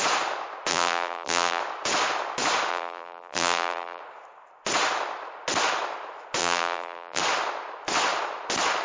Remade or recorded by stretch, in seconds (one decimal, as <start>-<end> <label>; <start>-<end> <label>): 0.0-0.7 recorded; 0.7-1.6 remade; 1.6-2.7 recorded; 2.7-4.0 remade; 4.0-6.4 recorded; 6.4-7.2 remade; 7.2-8.8 recorded